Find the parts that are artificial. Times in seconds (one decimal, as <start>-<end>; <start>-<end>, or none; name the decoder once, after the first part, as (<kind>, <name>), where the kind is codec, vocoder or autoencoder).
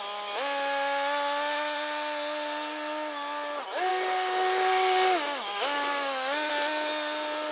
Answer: 3.9-6.5 (codec, DAC)